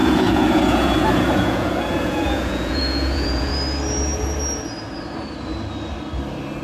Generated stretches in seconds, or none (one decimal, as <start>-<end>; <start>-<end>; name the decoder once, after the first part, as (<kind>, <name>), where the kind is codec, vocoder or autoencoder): 0.0-3.5 (vocoder, Vocos)

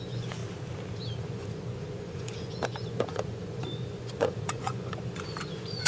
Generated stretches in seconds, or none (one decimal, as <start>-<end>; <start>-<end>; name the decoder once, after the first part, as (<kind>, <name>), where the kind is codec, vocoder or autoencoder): 0.0-0.4 (vocoder, Vocos); 1.2-5.9

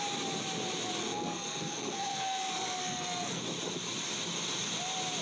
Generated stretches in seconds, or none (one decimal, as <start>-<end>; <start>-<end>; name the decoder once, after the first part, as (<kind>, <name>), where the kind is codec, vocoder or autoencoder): 1.0-3.4 (codec, SNAC)